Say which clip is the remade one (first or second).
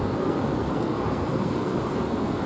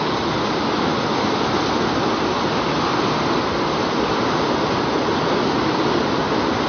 first